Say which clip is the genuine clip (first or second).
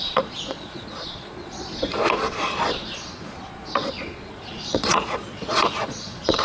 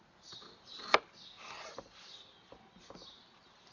second